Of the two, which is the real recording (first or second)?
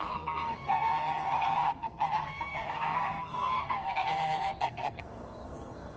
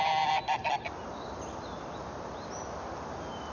second